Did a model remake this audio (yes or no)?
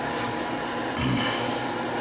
no